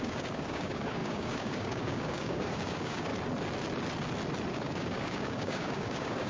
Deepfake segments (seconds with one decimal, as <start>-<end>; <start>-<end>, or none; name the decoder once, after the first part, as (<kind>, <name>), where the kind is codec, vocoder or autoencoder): 0.0-3.1 (codec, DAC); 4.5-6.3